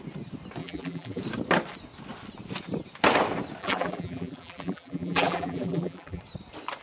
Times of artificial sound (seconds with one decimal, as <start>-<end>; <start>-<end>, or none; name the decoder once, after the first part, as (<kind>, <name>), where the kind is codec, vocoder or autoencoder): 0.6-1.2 (vocoder, BigVGAN v2); 3.6-6.2